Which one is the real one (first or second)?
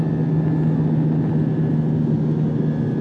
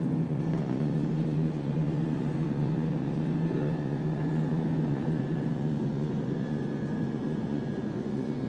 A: first